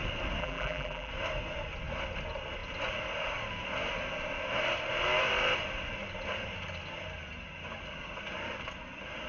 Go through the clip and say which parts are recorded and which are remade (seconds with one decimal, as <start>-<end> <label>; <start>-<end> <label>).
0.0-0.4 recorded; 0.4-1.1 remade; 1.1-9.3 recorded